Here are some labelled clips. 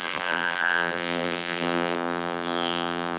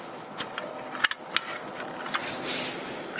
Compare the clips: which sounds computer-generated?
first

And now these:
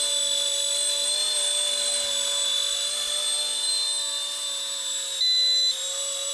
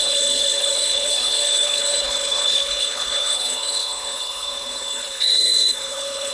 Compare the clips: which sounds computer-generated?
second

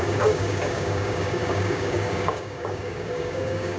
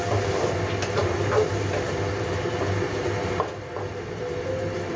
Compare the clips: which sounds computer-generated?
first